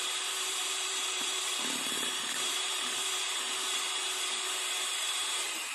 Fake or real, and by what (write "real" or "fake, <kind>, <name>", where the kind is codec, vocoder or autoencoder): fake, vocoder, BigVGAN v2